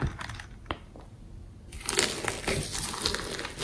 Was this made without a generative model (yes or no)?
yes